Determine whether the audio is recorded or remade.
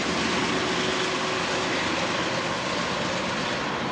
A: recorded